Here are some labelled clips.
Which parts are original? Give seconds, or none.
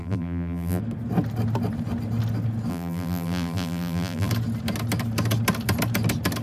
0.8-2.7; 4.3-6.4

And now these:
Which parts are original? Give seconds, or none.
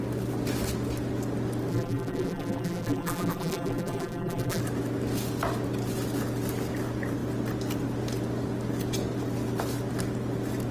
0.0-1.7; 4.6-10.7